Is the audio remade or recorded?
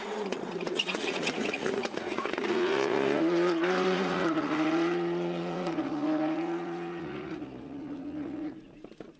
remade